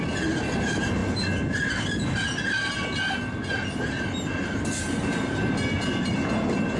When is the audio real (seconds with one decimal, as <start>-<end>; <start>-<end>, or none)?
0.0-6.8

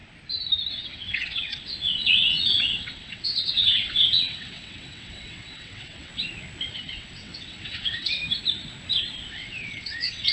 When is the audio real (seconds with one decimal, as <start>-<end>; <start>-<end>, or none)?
0.0-0.7; 6.1-6.7; 8.2-9.3

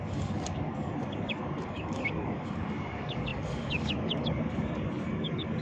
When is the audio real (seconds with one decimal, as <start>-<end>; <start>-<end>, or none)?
none